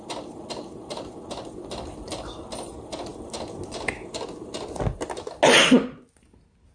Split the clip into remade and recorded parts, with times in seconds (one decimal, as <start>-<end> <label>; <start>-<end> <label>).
0.0-6.7 recorded